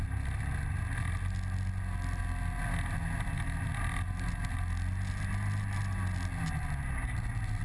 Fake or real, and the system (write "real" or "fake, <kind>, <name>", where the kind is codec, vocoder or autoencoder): real